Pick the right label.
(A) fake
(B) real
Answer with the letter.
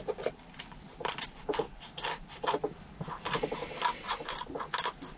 B